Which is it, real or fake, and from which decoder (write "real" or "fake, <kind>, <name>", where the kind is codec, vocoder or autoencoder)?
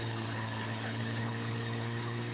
fake, codec, HILCodec